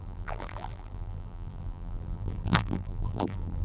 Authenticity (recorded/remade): remade